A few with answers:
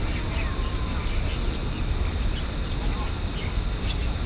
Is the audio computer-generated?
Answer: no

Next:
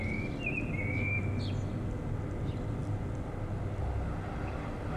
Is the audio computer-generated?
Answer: no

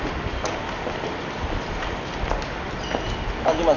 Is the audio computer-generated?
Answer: no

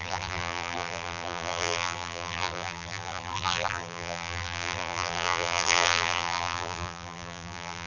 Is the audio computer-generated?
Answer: yes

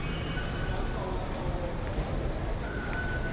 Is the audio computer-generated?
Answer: no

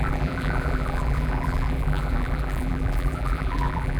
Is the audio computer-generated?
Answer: yes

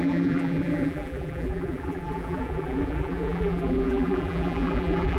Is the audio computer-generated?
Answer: yes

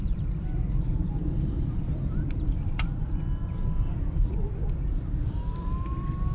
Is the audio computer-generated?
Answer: yes